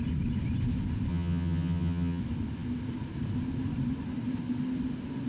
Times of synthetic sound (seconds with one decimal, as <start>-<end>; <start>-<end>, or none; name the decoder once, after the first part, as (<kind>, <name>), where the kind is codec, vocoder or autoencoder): 1.1-2.2 (vocoder, HiFi-GAN)